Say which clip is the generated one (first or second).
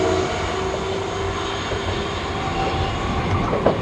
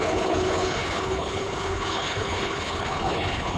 second